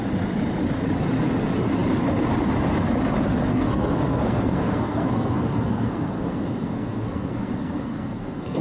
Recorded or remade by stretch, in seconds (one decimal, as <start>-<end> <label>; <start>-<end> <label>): 0.0-3.5 recorded; 3.5-8.6 remade